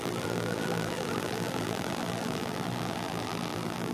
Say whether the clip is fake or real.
fake